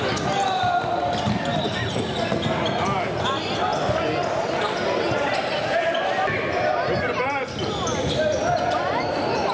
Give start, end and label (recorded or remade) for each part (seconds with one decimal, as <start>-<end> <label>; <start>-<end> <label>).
0.0-9.5 recorded